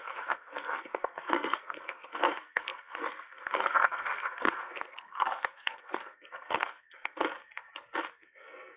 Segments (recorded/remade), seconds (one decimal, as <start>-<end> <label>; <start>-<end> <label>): 0.0-7.2 remade; 7.2-8.1 recorded; 8.1-8.8 remade